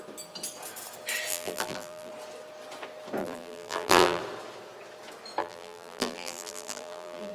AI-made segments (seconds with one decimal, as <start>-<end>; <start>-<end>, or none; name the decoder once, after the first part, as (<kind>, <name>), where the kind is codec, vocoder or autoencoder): 1.3-2.1 (vocoder, BigVGAN v2); 3.2-4.2; 5.4-7.3